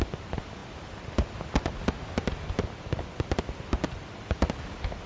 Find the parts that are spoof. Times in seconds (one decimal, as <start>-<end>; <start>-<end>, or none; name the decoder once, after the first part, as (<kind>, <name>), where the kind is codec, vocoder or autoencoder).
none